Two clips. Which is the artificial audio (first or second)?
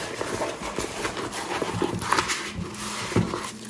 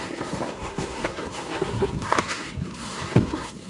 second